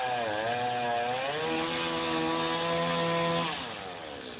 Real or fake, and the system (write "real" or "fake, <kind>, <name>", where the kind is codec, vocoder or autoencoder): real